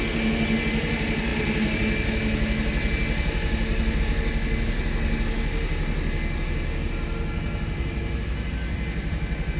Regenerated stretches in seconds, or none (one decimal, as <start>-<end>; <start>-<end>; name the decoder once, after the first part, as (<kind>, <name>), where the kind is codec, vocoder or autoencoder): none